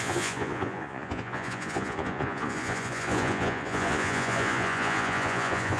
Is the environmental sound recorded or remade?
remade